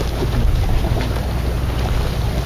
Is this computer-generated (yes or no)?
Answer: no